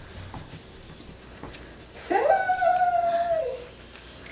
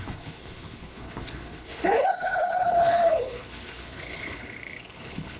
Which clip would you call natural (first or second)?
first